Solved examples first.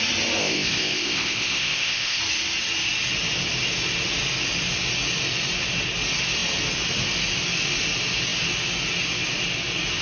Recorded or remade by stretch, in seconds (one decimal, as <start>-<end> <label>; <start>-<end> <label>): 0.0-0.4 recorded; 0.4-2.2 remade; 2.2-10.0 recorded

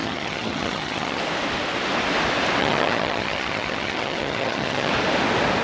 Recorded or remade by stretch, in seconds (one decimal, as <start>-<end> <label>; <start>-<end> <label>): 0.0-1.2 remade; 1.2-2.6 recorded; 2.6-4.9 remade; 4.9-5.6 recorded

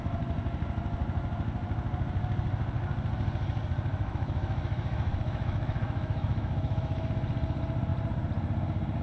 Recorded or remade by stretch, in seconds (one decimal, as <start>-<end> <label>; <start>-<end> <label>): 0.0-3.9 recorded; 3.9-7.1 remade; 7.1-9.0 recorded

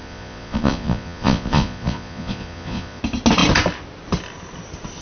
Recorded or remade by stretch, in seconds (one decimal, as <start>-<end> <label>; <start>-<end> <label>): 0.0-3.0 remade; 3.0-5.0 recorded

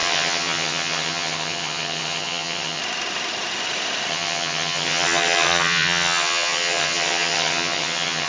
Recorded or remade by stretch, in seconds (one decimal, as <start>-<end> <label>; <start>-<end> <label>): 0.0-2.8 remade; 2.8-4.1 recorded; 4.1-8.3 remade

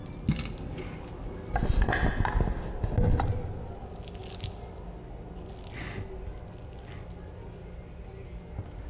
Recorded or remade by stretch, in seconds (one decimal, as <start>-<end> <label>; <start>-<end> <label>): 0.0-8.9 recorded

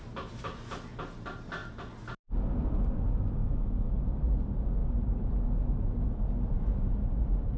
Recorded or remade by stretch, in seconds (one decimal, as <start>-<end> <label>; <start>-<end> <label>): 0.0-3.4 recorded; 3.4-3.9 remade; 3.9-7.6 recorded

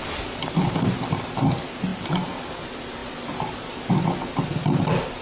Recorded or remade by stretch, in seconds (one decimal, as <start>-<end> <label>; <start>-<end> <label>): 0.0-5.2 recorded